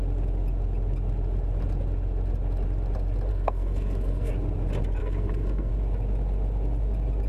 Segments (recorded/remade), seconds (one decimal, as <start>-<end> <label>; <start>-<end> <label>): 0.0-3.3 recorded; 3.3-4.3 remade; 4.3-5.0 recorded; 5.0-5.7 remade; 5.7-7.3 recorded